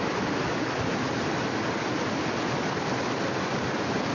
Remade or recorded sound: recorded